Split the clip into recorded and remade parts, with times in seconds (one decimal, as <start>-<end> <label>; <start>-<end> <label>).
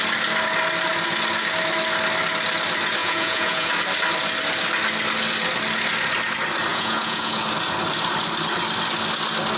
0.0-3.0 recorded; 3.0-3.7 remade; 3.7-6.7 recorded; 6.7-7.4 remade; 7.4-9.6 recorded